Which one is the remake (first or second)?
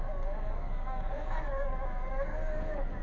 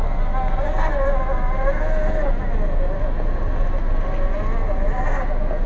first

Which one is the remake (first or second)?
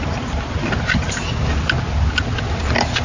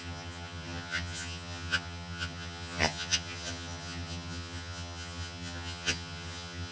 second